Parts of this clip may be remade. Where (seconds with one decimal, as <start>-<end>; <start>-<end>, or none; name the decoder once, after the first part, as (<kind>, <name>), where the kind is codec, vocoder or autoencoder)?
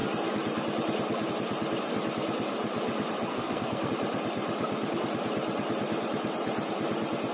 3.3-3.9 (codec, SNAC)